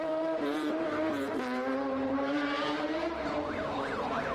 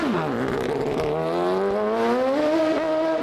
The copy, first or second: first